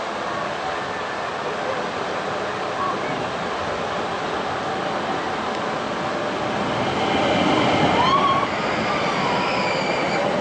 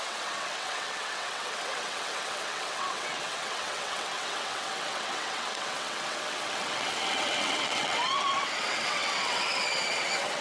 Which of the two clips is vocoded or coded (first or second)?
second